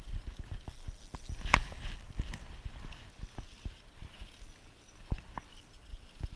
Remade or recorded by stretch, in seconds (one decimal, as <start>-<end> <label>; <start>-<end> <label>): 0.0-6.4 recorded